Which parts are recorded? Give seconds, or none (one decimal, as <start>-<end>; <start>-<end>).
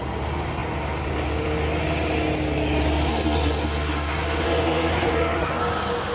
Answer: 0.0-3.1; 5.6-6.1